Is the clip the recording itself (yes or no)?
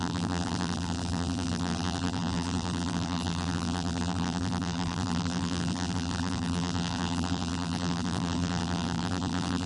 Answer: no